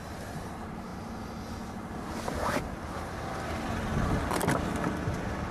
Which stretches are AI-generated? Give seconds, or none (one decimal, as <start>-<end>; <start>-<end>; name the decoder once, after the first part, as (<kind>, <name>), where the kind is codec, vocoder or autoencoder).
none